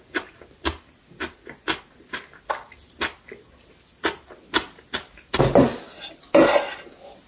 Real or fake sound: real